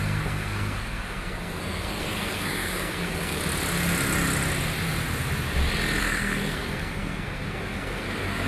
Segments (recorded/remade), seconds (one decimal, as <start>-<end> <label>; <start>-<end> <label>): 0.0-3.4 remade; 3.4-6.0 recorded; 6.0-8.5 remade